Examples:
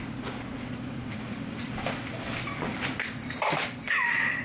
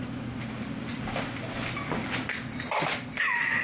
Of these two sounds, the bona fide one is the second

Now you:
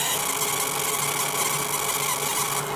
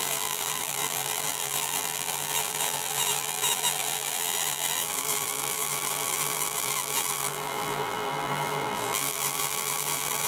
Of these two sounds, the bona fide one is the first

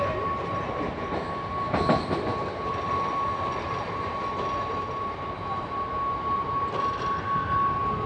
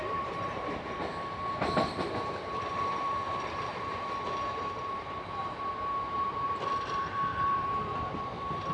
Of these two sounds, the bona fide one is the first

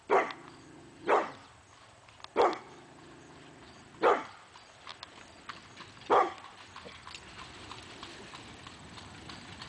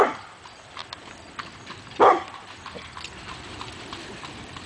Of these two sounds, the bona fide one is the first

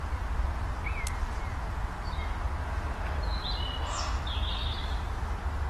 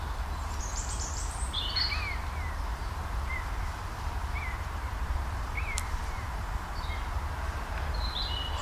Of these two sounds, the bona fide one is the first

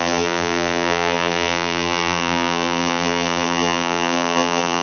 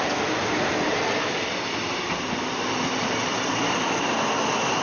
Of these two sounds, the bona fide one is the second